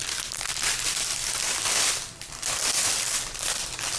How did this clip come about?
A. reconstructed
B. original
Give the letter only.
A